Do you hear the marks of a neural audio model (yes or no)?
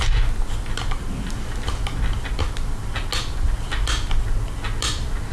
no